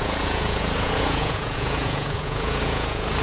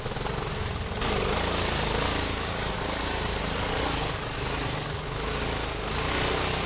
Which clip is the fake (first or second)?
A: first